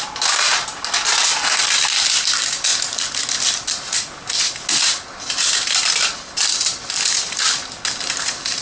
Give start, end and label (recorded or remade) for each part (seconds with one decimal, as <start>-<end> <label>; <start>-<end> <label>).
0.0-8.6 recorded

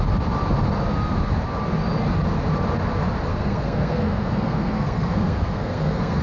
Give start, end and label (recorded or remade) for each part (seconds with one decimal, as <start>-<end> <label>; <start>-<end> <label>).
0.0-3.3 recorded; 3.3-6.2 remade

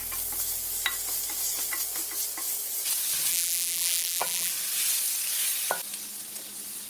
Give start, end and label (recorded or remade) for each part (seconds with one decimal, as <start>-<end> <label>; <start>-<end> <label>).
0.0-3.3 recorded; 3.3-4.5 remade; 4.5-6.9 recorded

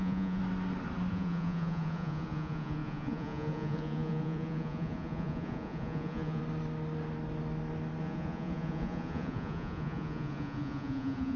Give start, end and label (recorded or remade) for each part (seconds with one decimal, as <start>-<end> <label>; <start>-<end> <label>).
0.0-0.4 remade; 0.4-1.1 recorded; 1.1-6.4 remade; 6.4-8.0 recorded; 8.0-11.4 remade

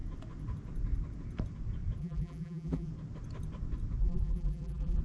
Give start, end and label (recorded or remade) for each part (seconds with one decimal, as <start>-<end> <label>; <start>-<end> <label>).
0.0-2.0 recorded; 2.0-2.9 remade; 2.9-4.0 recorded; 4.0-5.0 remade

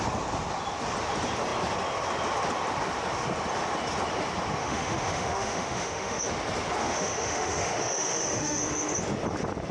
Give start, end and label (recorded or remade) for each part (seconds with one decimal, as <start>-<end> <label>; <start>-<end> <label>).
0.0-4.6 recorded; 4.6-6.2 remade; 6.2-6.8 recorded; 6.8-8.6 remade; 8.6-9.7 recorded

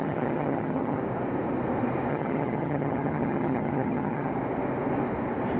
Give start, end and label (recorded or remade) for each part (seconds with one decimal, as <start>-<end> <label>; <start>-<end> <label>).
0.0-1.0 remade; 1.0-2.1 recorded; 2.1-4.3 remade; 4.3-5.6 recorded